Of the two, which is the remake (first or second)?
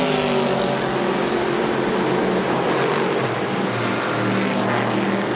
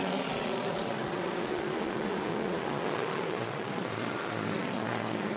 second